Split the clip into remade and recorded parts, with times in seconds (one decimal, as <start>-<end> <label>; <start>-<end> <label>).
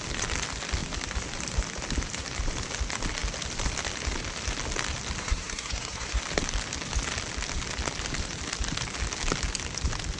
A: 0.0-5.2 recorded; 5.2-6.2 remade; 6.2-10.2 recorded